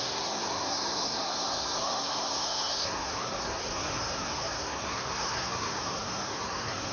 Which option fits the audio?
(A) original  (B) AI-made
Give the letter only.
B